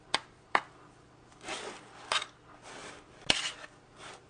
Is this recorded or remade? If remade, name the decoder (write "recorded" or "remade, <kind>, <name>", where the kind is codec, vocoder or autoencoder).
recorded